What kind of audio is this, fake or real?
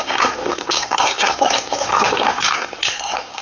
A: fake